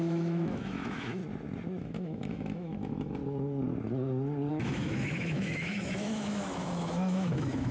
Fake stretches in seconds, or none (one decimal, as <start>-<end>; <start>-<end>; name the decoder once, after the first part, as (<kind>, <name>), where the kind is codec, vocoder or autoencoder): 0.0-1.2 (autoencoder, DAC-VAE); 1.8-3.2; 4.5-7.7